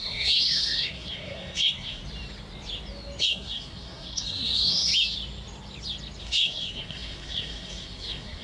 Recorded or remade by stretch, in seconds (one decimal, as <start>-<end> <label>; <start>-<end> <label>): 0.0-2.0 remade; 2.0-3.2 recorded; 3.2-4.9 remade; 4.9-6.2 recorded; 6.2-8.4 remade